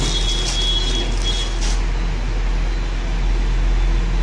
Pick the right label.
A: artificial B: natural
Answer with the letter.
B